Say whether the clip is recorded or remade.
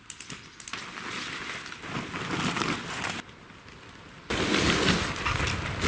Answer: recorded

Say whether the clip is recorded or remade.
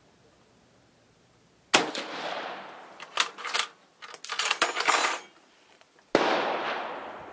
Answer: recorded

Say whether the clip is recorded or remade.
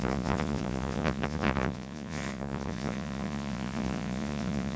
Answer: remade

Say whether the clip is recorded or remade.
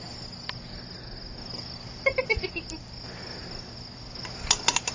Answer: recorded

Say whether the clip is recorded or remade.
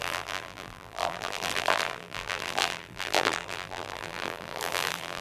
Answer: remade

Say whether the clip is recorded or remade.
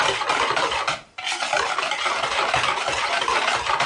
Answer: recorded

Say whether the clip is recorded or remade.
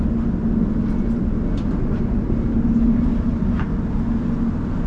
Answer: recorded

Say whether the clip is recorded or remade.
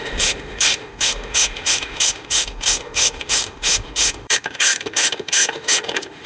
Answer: remade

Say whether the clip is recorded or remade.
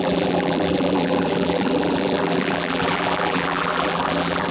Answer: remade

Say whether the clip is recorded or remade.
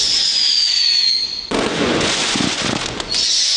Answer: remade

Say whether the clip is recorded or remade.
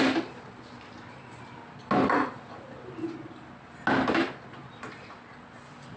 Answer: recorded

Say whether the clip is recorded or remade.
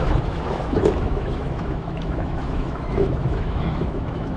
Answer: remade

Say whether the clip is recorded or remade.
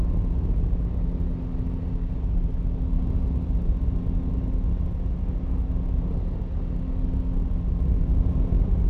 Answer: recorded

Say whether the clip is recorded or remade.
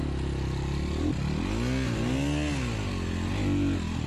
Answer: recorded